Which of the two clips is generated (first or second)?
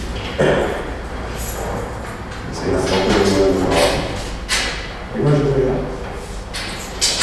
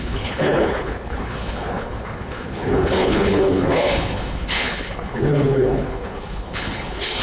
second